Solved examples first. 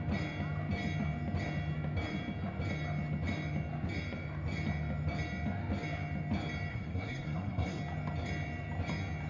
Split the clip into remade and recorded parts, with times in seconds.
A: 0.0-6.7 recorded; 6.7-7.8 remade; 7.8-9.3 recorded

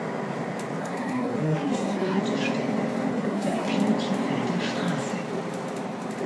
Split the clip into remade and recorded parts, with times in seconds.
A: 0.0-0.8 recorded; 0.8-2.2 remade; 2.2-3.1 recorded; 3.1-3.7 remade; 3.7-6.3 recorded

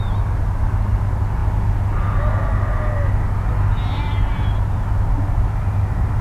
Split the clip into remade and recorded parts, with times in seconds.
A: 0.0-6.2 recorded

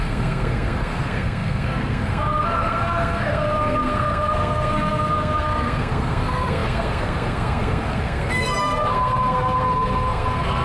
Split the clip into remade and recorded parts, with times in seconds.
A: 0.0-10.6 remade

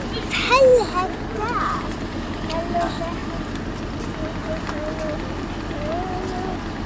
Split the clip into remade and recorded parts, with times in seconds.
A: 0.0-6.9 recorded